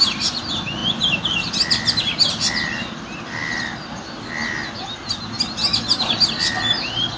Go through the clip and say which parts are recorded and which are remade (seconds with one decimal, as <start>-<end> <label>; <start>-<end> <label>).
0.0-7.2 recorded